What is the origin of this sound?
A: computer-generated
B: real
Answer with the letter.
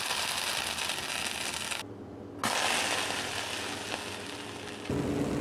B